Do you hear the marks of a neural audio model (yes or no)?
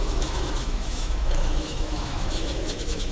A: yes